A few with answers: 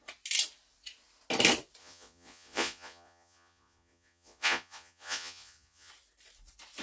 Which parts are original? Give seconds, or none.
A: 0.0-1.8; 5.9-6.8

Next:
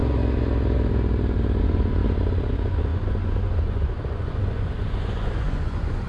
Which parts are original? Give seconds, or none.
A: 0.0-1.6; 2.0-2.5

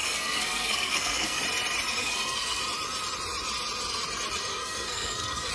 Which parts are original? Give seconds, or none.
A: 1.4-2.0; 2.6-4.5

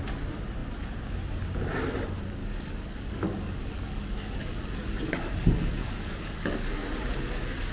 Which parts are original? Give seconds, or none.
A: 0.0-2.4; 5.3-5.8; 6.7-7.7

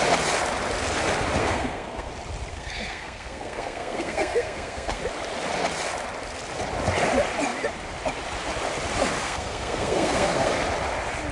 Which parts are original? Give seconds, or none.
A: 0.0-1.4; 2.1-2.5; 5.0-9.2; 10.5-11.3

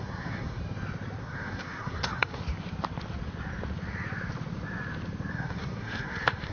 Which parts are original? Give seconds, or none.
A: 0.6-1.2; 2.4-5.3